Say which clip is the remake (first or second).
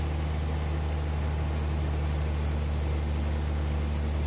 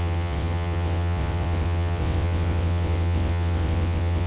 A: second